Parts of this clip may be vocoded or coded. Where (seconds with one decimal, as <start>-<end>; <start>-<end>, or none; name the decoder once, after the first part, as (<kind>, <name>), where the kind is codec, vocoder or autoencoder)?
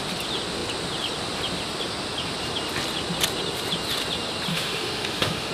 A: 4.5-5.5 (autoencoder, DAC-VAE)